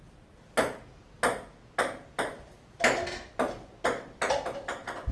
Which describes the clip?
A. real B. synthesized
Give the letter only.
A